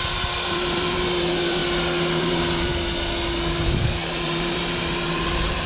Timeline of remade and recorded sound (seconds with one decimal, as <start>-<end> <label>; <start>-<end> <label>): 0.0-1.6 remade; 1.6-2.2 recorded; 2.2-2.7 remade; 2.7-3.5 recorded; 3.5-5.7 remade